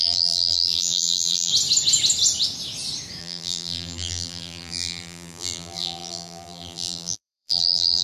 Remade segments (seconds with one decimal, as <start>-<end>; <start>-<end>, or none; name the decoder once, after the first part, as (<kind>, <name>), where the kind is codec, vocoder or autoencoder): 0.0-1.5 (vocoder, BigVGAN v2); 3.2-8.0